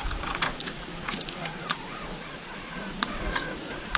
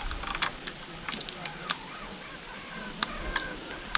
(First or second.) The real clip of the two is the second